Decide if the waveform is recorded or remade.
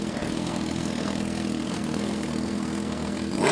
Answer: remade